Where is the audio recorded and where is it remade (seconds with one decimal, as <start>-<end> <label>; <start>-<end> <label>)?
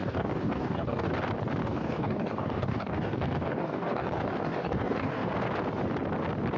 0.0-1.1 remade; 1.1-1.6 recorded; 1.6-5.3 remade; 5.3-6.6 recorded